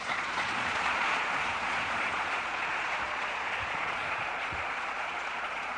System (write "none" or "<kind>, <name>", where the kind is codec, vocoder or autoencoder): vocoder, Vocos